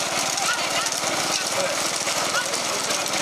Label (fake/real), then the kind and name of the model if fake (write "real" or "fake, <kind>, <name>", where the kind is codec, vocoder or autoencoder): real